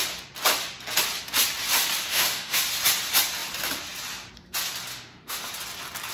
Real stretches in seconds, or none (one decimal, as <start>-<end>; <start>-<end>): 0.0-2.1; 2.6-4.9; 5.5-6.1